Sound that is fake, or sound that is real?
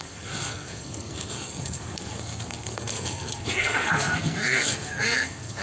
fake